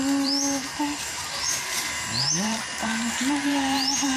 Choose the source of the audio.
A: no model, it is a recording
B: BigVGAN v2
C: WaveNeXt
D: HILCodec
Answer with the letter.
B